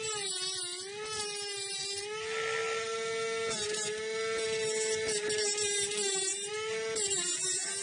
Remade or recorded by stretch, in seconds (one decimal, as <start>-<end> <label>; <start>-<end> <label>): 0.0-7.8 recorded